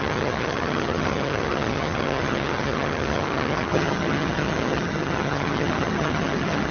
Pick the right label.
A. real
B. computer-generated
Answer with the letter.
B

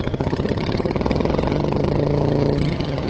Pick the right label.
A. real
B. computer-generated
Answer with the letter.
B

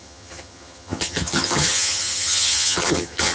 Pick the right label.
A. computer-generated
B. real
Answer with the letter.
A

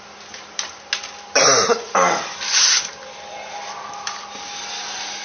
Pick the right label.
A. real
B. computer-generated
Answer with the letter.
A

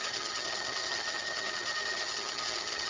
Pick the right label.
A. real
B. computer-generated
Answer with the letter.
B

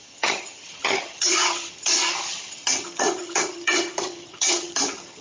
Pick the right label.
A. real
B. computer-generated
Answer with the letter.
B